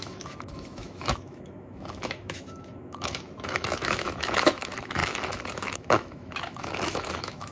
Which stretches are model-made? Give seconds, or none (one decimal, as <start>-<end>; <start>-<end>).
0.0-7.5